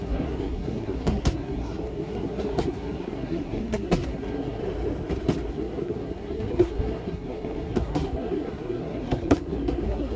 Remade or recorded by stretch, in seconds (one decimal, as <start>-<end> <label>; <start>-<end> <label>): 0.0-4.6 remade; 4.6-5.5 recorded; 5.5-10.2 remade